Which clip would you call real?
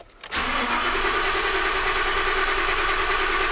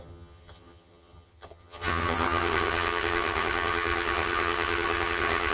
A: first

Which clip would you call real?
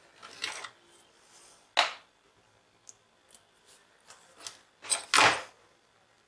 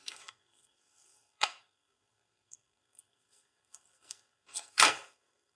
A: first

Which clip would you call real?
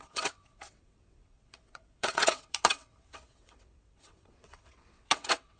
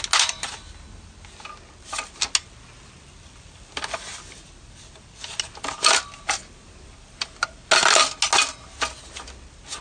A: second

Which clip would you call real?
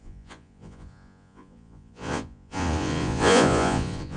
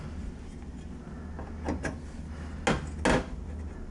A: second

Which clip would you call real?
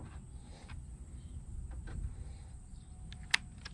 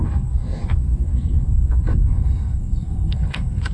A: first